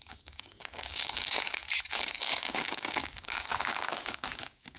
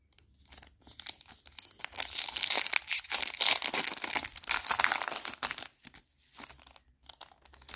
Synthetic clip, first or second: first